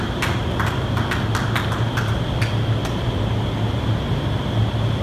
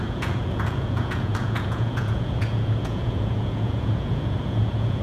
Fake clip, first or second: second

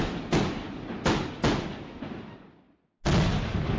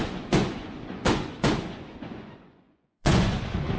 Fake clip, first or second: second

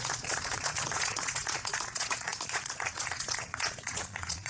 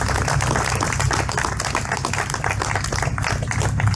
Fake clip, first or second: first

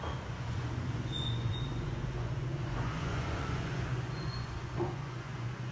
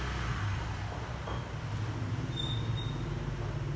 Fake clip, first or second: first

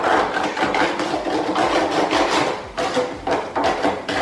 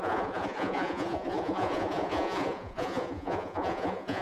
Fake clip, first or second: second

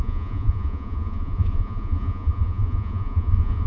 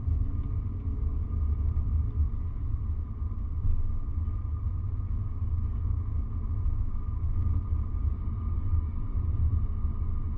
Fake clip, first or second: first